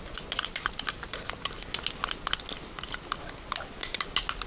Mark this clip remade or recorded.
recorded